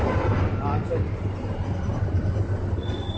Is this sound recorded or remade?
recorded